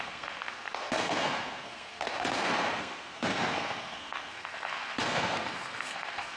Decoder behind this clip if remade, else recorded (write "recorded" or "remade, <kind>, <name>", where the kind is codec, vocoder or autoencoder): remade, codec, SNAC